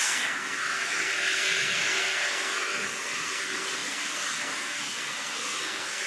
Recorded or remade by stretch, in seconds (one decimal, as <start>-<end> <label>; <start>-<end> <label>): 0.0-6.1 remade

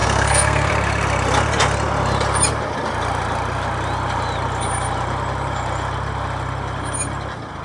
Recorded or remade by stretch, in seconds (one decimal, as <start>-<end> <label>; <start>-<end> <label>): 0.0-0.7 remade; 0.7-7.6 recorded

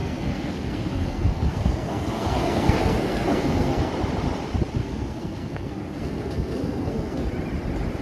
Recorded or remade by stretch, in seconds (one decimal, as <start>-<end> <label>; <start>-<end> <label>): 0.0-3.9 remade; 3.9-4.8 recorded; 4.8-7.3 remade; 7.3-8.0 recorded

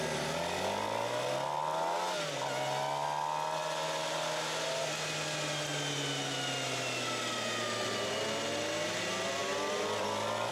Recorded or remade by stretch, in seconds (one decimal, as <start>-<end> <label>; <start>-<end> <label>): 0.0-10.5 recorded